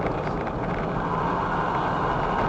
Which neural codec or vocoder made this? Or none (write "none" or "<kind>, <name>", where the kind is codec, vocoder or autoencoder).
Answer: none